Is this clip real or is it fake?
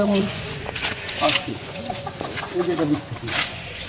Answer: fake